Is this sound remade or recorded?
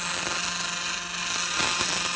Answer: recorded